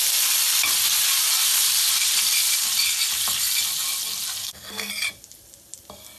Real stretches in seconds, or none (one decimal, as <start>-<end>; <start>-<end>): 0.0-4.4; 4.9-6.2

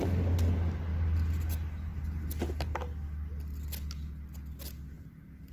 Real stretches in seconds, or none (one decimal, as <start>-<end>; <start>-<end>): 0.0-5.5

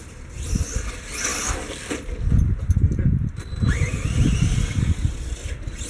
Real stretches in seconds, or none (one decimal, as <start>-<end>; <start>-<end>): 0.0-5.9

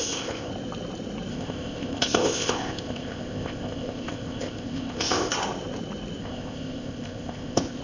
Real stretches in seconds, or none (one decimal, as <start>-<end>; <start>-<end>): 0.5-1.3; 5.3-6.2

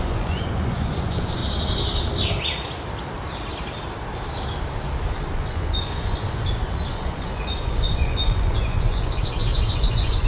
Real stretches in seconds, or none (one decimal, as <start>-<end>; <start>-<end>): 1.4-5.3